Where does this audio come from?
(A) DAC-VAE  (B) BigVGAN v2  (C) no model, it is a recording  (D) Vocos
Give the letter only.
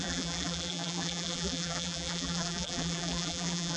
B